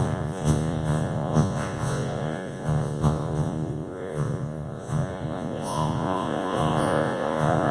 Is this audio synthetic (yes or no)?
yes